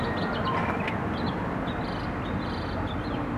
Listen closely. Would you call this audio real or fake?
real